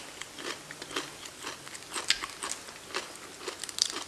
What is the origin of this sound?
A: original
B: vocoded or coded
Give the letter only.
A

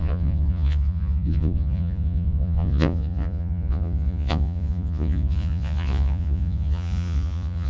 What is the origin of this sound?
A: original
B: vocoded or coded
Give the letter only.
B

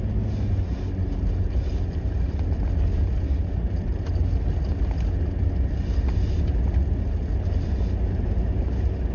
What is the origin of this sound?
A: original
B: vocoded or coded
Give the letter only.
A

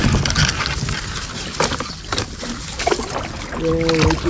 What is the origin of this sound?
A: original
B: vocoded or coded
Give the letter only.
A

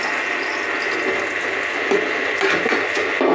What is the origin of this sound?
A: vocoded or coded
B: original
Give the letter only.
B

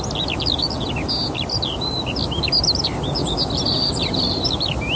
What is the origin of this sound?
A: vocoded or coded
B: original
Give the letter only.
B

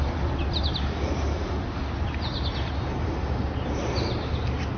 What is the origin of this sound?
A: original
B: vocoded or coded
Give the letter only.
A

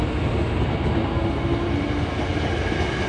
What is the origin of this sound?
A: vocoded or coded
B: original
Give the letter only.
B